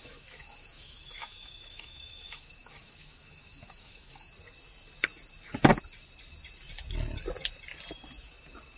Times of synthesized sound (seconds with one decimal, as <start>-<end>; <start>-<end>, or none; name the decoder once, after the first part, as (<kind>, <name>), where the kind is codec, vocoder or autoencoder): 0.0-4.3 (autoencoder, DAC-VAE)